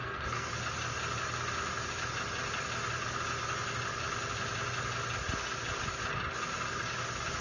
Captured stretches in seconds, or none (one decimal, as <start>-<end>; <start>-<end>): 0.5-7.4

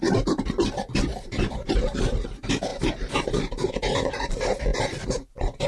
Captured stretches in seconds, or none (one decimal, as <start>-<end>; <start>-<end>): 0.0-5.7

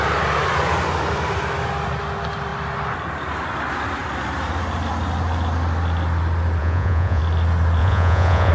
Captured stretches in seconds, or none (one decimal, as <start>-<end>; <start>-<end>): 0.0-6.6; 7.2-7.8

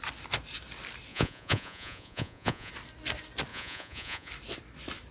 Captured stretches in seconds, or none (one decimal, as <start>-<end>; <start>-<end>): 0.0-1.1; 2.7-3.5; 4.3-5.1

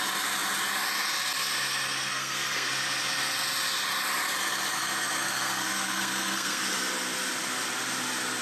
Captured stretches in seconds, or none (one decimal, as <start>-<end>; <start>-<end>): 0.0-2.1; 2.7-4.8; 6.6-8.4

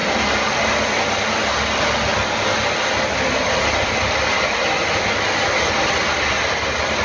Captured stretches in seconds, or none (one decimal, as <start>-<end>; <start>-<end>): 0.8-7.0

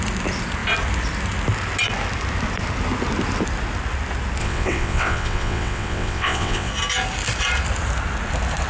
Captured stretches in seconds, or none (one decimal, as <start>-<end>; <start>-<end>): 0.0-4.4; 6.7-8.7

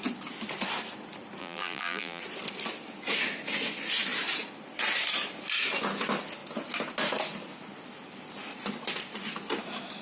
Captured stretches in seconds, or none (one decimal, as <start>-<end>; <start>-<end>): 0.0-1.4; 2.2-10.0